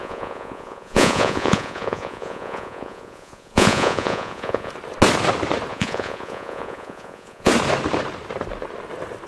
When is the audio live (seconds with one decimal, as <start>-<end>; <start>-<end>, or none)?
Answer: 4.7-5.7; 7.5-9.3